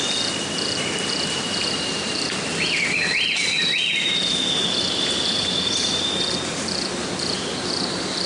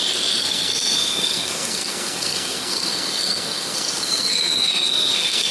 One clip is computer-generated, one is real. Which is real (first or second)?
first